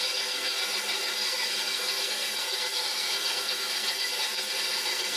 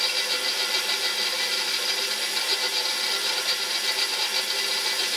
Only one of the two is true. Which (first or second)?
second